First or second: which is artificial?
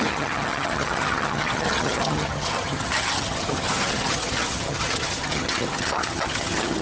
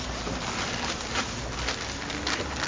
first